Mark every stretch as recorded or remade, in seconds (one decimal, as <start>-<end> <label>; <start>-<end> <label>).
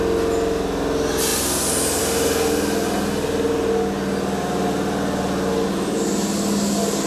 0.0-7.1 recorded